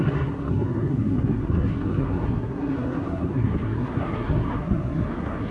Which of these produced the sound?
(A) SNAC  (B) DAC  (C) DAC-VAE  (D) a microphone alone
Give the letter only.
A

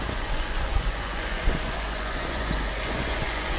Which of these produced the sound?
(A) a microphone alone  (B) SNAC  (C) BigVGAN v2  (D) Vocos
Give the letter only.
D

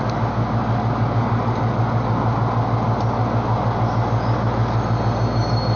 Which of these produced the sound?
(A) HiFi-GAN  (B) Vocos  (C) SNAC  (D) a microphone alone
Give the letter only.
D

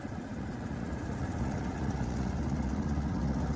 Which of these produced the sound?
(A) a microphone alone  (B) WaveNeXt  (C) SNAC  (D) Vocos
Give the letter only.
D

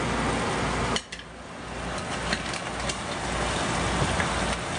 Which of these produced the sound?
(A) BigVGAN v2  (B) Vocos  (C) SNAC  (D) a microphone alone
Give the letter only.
D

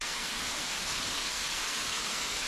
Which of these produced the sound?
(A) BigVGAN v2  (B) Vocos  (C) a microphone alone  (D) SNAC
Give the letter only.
D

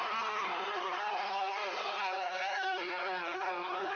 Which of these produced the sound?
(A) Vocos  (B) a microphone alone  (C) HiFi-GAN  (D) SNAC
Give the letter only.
D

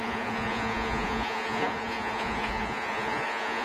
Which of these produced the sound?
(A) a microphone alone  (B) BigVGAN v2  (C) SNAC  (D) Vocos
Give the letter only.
D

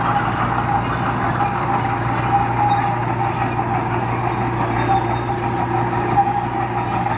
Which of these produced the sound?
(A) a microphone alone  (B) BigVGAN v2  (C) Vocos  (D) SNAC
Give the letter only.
A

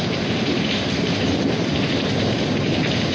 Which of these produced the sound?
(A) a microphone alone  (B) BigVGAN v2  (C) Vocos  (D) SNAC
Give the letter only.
B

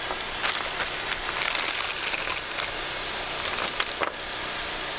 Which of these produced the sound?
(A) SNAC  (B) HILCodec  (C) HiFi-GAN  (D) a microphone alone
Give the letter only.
D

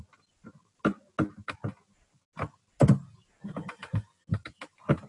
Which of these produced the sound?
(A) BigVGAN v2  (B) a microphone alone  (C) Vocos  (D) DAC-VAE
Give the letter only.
B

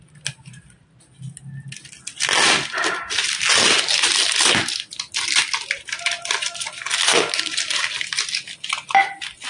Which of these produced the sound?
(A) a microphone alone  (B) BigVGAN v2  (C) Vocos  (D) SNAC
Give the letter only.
A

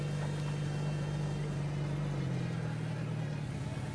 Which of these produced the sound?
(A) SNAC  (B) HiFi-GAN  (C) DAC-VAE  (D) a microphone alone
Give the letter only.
D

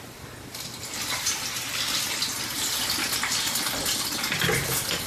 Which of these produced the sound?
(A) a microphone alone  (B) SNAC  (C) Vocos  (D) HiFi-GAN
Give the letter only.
A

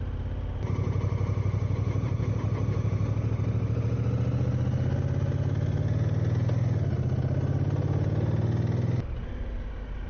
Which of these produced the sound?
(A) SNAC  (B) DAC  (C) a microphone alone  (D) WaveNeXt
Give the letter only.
C